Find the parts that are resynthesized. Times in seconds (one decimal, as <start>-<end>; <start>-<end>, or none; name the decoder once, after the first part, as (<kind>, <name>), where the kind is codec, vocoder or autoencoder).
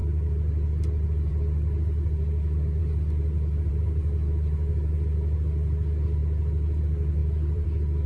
0.0-6.2 (vocoder, BigVGAN v2); 6.8-8.1